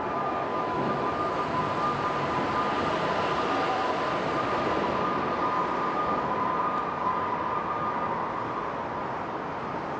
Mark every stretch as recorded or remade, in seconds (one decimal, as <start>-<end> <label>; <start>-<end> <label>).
0.0-0.5 recorded; 0.5-1.2 remade; 1.2-10.0 recorded